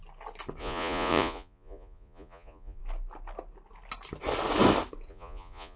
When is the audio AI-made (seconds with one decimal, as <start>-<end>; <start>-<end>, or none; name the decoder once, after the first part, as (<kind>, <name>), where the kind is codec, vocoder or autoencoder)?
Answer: 0.6-2.8 (vocoder, Vocos); 5.1-5.8